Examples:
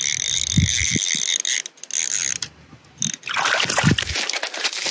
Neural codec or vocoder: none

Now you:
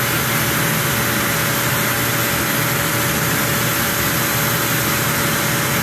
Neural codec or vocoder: none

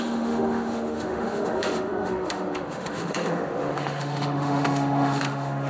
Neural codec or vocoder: autoencoder, DAC-VAE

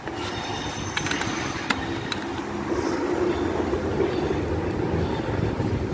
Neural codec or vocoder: none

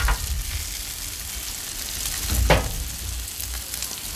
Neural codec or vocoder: none